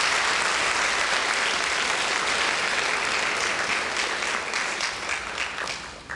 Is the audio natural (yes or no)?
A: yes